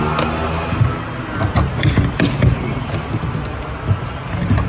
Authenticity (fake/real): real